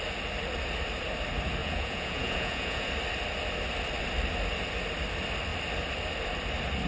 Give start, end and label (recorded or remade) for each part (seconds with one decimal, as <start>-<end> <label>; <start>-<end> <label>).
0.0-1.6 recorded; 1.6-2.9 remade; 2.9-6.9 recorded